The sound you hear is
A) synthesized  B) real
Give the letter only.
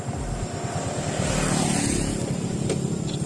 B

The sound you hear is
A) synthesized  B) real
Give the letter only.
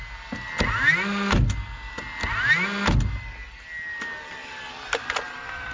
B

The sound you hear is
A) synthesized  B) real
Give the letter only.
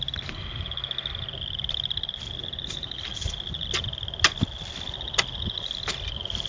B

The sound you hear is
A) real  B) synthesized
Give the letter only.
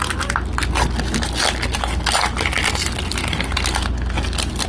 A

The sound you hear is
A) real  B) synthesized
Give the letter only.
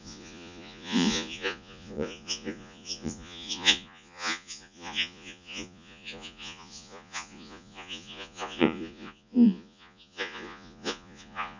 B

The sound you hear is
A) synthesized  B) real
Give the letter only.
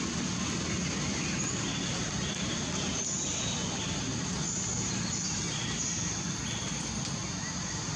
B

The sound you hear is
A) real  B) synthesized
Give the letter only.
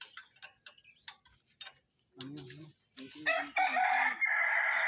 A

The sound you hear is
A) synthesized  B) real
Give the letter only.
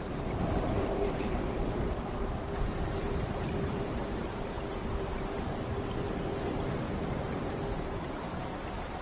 A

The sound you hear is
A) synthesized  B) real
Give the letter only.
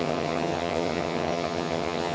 A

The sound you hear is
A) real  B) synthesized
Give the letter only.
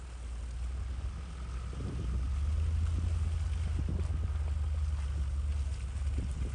A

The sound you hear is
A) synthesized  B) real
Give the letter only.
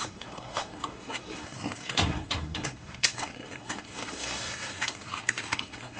A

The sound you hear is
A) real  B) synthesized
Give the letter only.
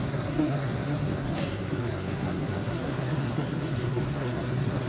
B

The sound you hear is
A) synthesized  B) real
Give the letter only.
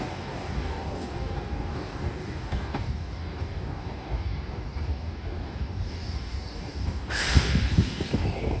A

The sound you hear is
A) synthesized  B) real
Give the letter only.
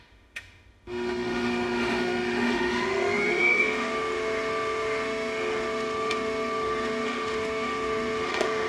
A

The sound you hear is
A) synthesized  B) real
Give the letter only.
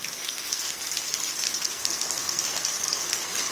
A